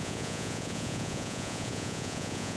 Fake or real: fake